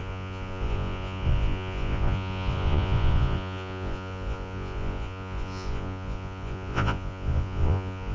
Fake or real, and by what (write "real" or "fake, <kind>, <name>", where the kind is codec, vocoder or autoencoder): fake, vocoder, Vocos